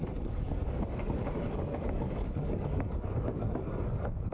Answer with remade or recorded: remade